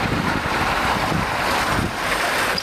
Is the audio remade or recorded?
recorded